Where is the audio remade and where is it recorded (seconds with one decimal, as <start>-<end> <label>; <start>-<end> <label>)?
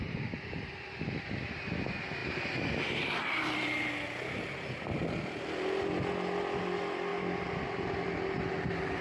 0.0-9.0 recorded